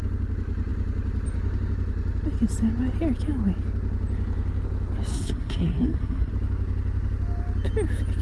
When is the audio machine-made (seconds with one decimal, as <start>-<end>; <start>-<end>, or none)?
5.1-6.3